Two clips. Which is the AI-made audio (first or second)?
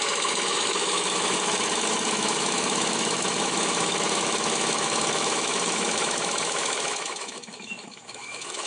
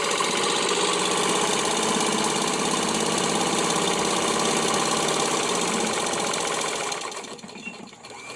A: first